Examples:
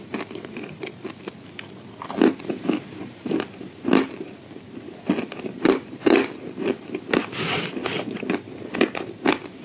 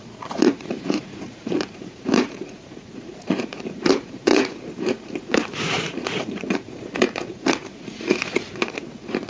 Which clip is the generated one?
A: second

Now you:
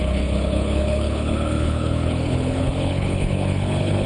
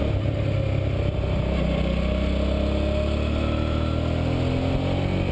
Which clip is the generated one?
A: first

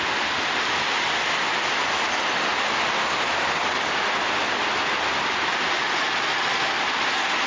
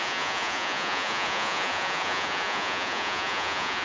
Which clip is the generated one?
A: second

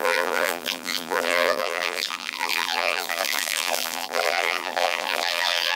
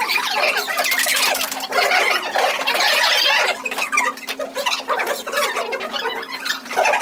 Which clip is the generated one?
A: first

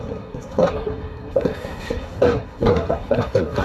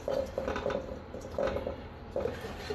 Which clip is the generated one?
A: first